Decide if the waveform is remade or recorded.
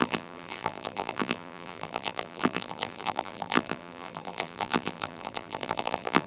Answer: remade